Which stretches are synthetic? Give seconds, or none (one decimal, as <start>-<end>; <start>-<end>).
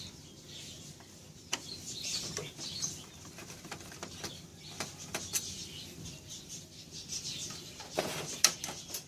none